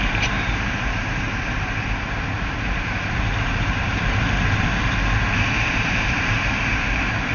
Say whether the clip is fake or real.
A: fake